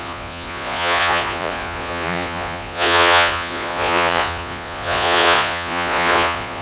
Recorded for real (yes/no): no